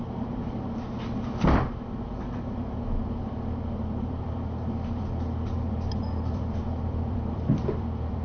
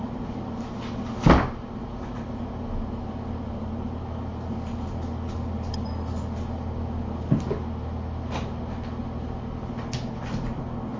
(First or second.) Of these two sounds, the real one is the second